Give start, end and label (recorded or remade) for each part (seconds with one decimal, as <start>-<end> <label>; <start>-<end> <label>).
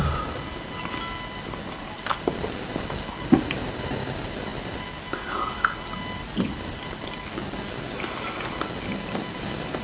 0.0-9.8 recorded